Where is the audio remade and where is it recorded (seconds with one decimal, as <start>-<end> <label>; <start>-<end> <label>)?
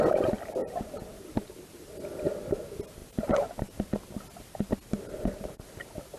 0.0-6.2 recorded